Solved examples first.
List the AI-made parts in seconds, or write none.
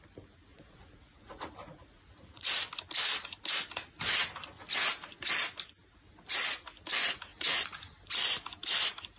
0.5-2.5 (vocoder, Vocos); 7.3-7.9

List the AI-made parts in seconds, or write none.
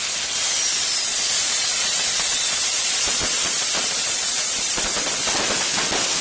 1.1-4.8 (vocoder, Vocos)